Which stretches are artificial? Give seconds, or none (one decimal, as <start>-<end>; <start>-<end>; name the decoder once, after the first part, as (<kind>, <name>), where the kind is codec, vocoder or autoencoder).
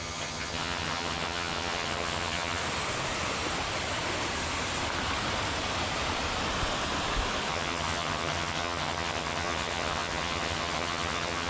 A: 0.0-2.6 (vocoder, HiFi-GAN); 7.5-11.5